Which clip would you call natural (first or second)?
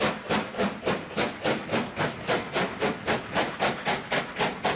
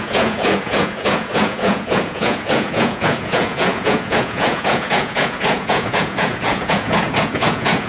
first